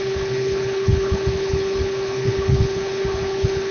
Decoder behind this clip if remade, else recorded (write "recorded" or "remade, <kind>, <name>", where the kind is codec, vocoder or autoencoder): remade, codec, HILCodec